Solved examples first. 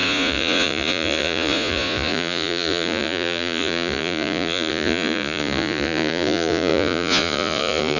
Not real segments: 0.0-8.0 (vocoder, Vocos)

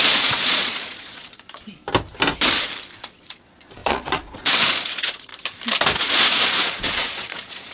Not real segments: 0.0-1.8 (vocoder, Vocos); 3.0-5.3; 6.0-7.7

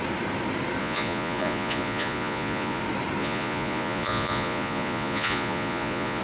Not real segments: 0.8-2.8 (vocoder, Vocos); 3.2-6.2

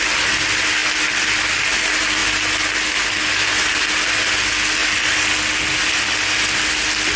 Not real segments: none

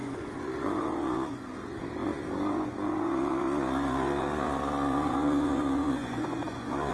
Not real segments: 0.0-6.9 (vocoder, Vocos)